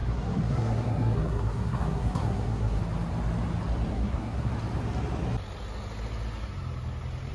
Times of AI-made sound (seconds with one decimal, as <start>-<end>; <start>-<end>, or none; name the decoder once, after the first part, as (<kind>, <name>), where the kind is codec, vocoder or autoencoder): 0.0-2.8 (codec, SNAC); 3.9-4.5